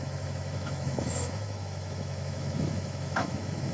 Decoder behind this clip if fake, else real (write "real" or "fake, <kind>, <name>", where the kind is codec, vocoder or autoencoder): fake, autoencoder, DAC-VAE